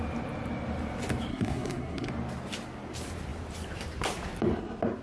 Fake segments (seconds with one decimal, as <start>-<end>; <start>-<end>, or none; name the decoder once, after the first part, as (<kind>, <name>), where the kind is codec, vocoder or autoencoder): 1.3-2.1 (codec, SNAC)